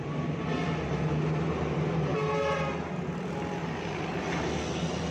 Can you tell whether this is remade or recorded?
recorded